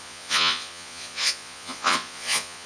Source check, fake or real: fake